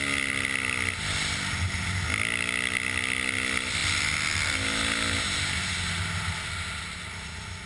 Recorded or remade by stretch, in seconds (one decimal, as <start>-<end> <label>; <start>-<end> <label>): 0.0-7.7 recorded

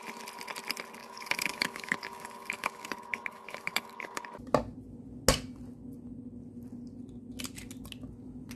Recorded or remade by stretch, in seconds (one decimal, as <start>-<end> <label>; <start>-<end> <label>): 0.0-1.0 recorded; 1.0-4.3 remade; 4.3-8.6 recorded